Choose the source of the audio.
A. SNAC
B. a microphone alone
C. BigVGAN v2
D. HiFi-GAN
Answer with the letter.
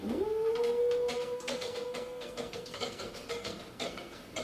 A